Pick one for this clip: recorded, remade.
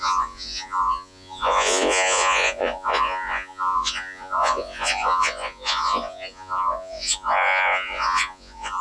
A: remade